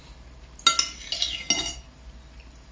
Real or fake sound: real